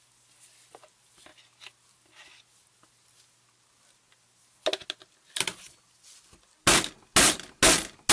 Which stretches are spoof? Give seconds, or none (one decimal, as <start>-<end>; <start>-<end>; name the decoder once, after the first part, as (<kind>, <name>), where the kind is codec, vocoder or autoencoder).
none